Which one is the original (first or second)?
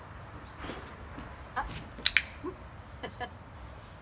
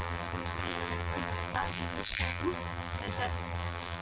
first